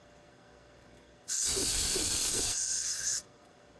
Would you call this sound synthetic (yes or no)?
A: yes